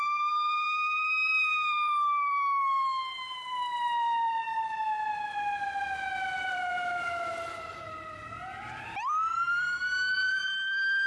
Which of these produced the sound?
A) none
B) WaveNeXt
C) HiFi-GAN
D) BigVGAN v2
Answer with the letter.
D